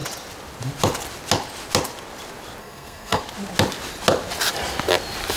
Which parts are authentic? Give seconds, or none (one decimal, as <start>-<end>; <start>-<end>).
0.0-2.6; 3.2-5.4